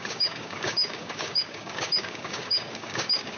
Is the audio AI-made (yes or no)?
yes